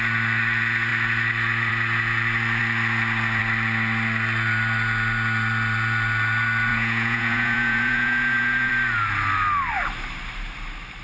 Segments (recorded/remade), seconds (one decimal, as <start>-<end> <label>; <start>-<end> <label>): 0.0-6.7 recorded; 6.7-8.7 remade; 8.7-11.0 recorded